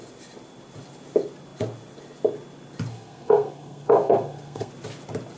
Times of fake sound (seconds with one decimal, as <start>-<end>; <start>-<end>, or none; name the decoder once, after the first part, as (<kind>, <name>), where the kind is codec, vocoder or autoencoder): 2.9-4.7 (codec, SNAC)